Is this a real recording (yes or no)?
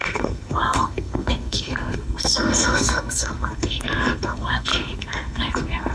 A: no